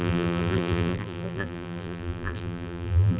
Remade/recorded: remade